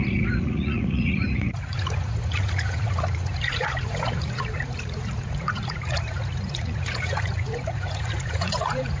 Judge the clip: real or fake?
fake